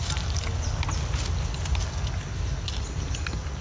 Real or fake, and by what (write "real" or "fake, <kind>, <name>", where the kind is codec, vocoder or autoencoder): real